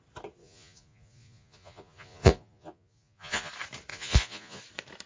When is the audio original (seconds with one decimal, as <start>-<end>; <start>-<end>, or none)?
0.0-0.4; 3.5-3.9; 4.6-5.1